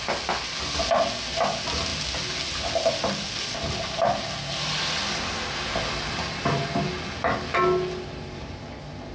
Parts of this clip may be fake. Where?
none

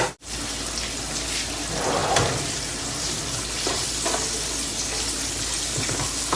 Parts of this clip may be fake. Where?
2.0-3.2 (vocoder, BigVGAN v2)

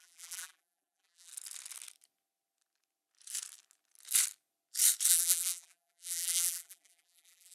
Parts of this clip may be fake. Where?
0.0-1.3 (vocoder, BigVGAN v2); 5.1-7.5

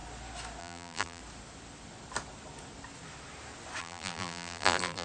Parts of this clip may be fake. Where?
0.6-1.2 (vocoder, BigVGAN v2); 3.8-5.0

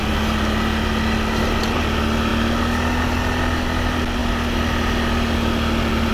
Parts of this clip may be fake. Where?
none